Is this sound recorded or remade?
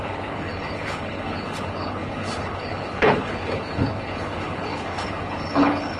remade